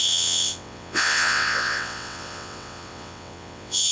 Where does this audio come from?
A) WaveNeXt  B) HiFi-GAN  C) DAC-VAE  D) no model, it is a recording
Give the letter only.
A